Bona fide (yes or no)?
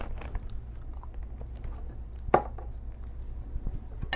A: yes